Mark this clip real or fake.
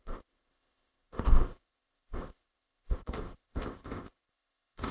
fake